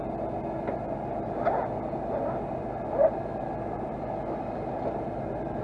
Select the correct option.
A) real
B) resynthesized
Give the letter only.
A